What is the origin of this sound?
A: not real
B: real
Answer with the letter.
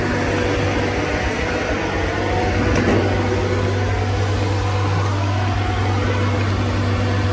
B